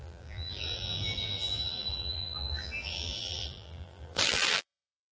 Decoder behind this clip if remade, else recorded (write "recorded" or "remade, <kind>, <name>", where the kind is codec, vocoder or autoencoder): remade, vocoder, BigVGAN v2